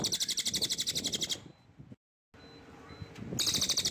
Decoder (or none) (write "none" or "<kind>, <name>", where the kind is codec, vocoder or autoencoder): none